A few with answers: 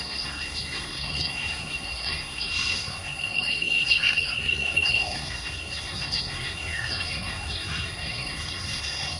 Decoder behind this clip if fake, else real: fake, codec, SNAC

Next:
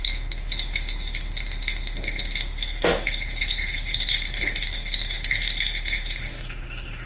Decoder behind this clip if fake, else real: fake, autoencoder, DAC-VAE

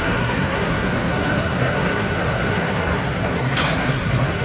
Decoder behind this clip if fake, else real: fake, codec, SNAC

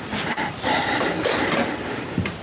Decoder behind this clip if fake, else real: fake, vocoder, BigVGAN v2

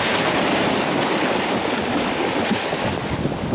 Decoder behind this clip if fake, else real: real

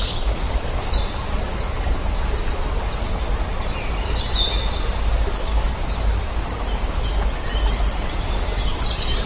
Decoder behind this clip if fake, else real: real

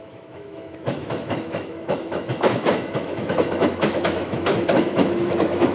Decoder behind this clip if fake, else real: fake, autoencoder, DAC-VAE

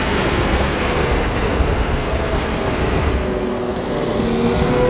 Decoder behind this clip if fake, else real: fake, codec, SNAC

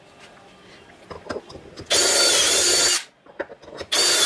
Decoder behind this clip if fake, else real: real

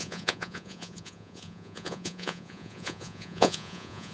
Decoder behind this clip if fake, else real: fake, vocoder, Vocos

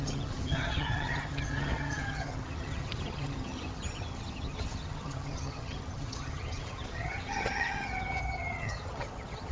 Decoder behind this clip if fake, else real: fake, vocoder, HiFi-GAN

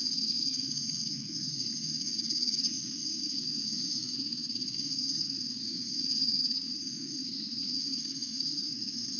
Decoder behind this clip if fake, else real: fake, codec, SNAC